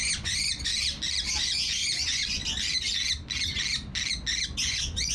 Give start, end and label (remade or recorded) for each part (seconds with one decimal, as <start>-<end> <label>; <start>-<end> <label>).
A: 0.0-0.7 remade; 0.7-1.4 recorded; 1.4-2.4 remade; 2.4-4.4 recorded; 4.4-5.1 remade